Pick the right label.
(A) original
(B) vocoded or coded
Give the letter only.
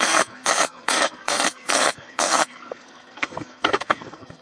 B